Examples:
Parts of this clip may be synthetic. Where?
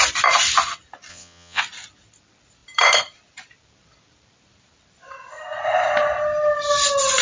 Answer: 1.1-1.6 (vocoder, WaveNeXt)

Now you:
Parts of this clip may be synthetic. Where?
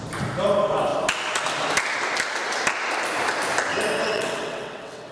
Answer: 4.0-5.1 (vocoder, WaveNeXt)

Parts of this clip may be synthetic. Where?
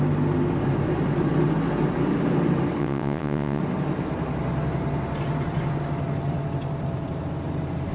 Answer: 2.8-3.6 (vocoder, WaveNeXt)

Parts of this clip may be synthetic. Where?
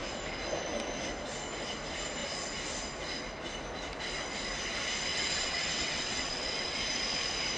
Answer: 5.1-6.8 (vocoder, WaveNeXt)